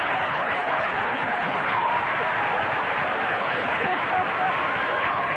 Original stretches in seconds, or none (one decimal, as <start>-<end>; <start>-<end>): 1.9-3.3; 4.0-5.0